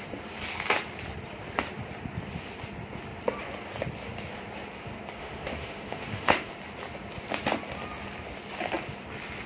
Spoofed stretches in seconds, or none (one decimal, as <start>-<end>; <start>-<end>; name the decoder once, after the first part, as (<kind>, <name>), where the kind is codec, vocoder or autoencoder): 5.2-6.5 (autoencoder, DAC-VAE)